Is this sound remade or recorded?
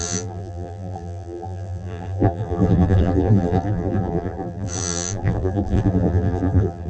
remade